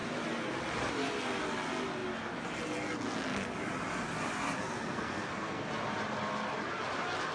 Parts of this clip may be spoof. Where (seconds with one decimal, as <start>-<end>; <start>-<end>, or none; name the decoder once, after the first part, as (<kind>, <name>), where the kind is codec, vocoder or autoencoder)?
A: 4.7-5.7 (codec, SNAC)